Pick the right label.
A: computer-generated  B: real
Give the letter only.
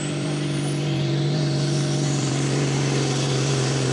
A